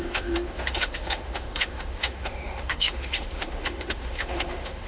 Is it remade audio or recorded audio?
remade